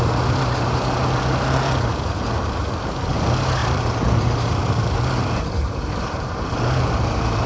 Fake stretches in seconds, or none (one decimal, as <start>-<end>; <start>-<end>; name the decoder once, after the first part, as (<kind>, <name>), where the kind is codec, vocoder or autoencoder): 3.6-4.8 (vocoder, BigVGAN v2); 5.6-6.5